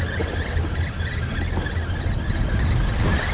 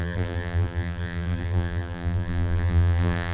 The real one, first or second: first